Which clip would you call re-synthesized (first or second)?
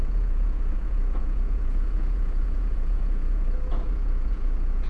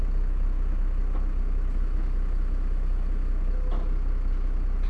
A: first